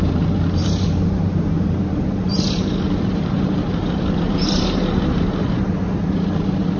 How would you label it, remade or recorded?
remade